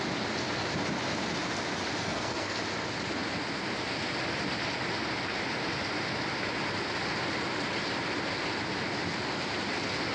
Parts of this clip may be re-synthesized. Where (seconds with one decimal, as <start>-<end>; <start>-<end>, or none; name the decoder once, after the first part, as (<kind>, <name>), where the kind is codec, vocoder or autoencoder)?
2.0-2.6 (codec, SNAC)